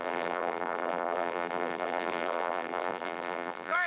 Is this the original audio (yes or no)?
no